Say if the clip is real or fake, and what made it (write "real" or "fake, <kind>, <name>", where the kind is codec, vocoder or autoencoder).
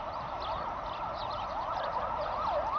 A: real